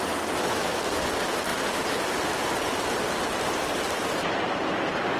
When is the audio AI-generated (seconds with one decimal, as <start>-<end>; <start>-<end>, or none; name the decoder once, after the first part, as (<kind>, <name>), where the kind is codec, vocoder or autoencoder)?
none